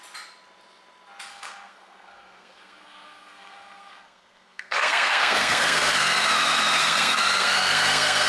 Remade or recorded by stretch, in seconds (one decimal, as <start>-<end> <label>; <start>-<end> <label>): 0.0-1.3 recorded; 1.3-6.3 remade; 6.3-6.8 recorded; 6.8-8.3 remade